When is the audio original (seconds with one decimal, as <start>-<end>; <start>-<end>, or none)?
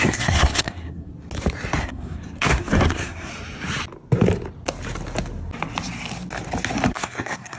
1.1-1.8; 3.3-6.9